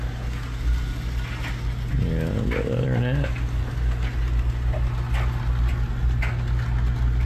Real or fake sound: real